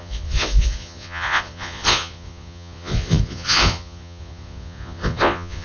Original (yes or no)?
no